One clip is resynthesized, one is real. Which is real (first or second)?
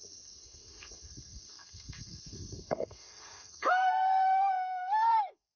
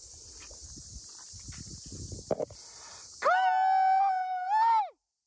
second